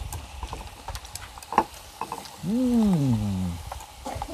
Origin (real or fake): real